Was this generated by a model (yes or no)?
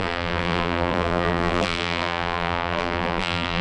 yes